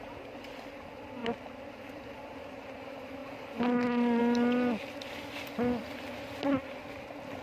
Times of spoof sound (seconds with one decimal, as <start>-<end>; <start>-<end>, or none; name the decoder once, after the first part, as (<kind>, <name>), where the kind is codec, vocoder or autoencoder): none